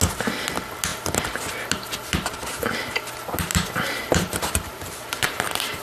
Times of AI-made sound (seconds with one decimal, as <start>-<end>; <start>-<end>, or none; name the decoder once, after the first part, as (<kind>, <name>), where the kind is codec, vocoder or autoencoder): 3.5-5.8 (vocoder, BigVGAN v2)